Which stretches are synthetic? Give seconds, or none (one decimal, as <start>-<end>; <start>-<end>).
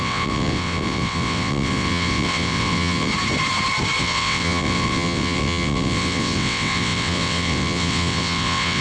0.0-3.1; 4.0-8.8